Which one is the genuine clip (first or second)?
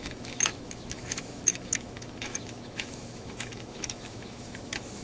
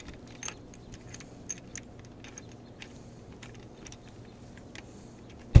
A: second